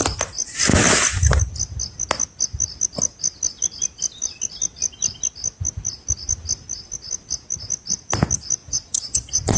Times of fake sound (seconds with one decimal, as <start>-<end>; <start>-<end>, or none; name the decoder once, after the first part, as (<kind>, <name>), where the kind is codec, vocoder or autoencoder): 8.6-9.6 (vocoder, Vocos)